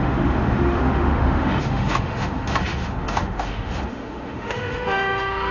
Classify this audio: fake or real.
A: fake